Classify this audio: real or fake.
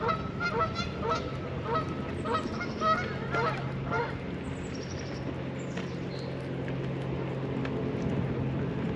real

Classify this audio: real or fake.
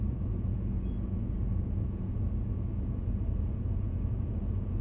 fake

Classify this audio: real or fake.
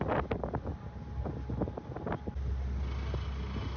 real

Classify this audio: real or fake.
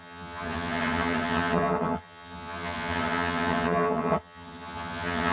fake